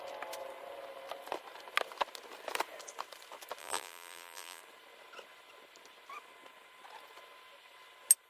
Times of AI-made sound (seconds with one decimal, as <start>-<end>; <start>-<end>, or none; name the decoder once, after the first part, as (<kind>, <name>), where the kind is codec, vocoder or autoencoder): 3.6-4.6 (vocoder, BigVGAN v2)